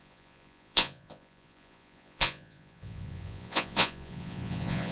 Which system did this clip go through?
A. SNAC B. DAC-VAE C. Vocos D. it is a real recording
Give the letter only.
C